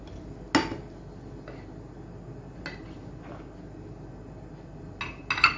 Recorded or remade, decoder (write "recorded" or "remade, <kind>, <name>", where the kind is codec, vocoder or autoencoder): recorded